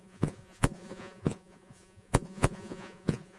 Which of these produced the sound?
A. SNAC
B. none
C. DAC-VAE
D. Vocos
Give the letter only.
D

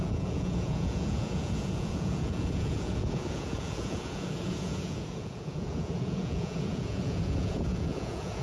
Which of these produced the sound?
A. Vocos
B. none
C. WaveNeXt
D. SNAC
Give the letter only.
A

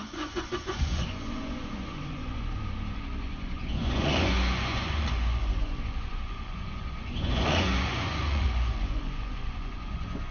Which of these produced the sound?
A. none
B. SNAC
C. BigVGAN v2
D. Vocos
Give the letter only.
D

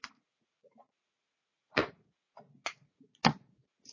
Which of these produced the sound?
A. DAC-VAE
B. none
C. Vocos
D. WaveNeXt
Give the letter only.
C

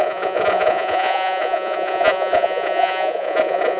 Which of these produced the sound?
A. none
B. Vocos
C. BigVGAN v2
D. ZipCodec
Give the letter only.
B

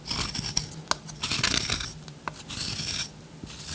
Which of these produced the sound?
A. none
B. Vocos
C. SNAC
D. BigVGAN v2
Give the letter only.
A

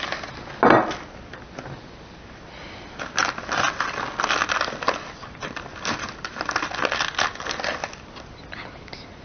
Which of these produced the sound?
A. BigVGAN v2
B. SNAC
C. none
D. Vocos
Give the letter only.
C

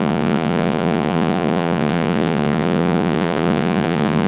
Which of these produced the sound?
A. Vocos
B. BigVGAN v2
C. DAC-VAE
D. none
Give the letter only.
A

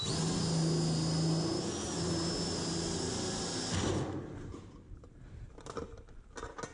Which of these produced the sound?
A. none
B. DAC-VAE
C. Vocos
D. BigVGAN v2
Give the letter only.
A